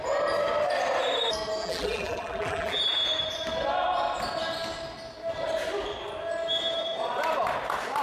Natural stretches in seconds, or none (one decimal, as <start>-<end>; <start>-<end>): 0.0-1.6; 2.8-8.0